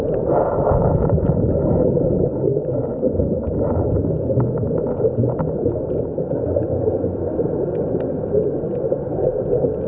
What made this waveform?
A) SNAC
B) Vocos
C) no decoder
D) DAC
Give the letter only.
C